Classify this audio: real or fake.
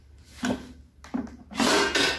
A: real